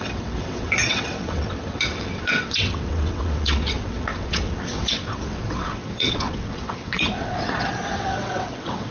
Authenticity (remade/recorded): remade